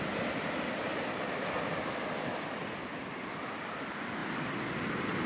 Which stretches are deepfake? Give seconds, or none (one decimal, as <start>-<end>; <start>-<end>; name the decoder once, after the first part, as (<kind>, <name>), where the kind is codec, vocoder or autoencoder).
none